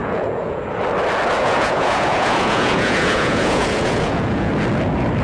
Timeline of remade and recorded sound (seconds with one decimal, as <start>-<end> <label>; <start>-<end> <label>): 0.0-0.7 remade; 0.7-1.4 recorded; 1.4-4.5 remade; 4.5-5.2 recorded